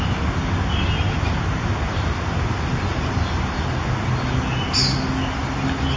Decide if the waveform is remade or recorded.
recorded